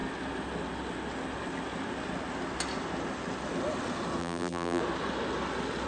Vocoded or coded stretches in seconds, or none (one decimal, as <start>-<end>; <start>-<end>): 4.2-4.8